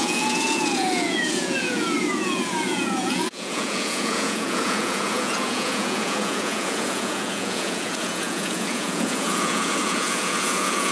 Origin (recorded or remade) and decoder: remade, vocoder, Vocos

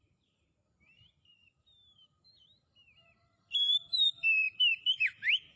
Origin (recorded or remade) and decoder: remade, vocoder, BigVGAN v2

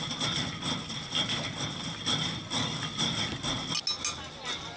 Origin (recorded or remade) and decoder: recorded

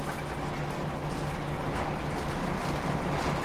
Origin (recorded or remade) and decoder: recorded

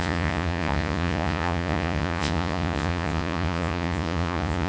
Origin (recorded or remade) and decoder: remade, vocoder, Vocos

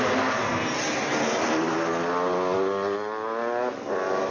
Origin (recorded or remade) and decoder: recorded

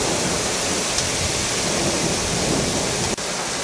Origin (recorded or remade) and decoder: recorded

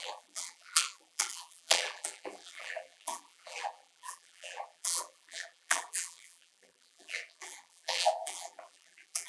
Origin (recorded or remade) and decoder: remade, vocoder, BigVGAN v2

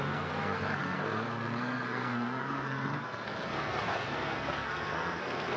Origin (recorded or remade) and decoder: remade, codec, SNAC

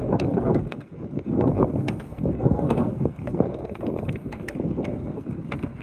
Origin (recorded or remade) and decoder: remade, codec, SNAC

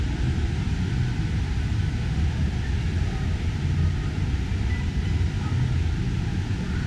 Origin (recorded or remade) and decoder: recorded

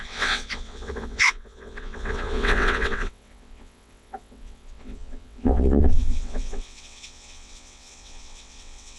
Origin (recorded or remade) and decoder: remade, vocoder, WaveNeXt